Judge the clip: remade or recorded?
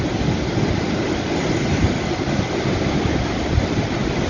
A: recorded